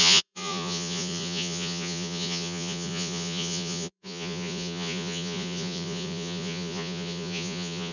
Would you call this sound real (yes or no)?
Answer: no